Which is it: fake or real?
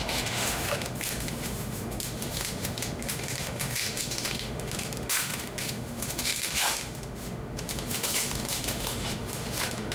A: fake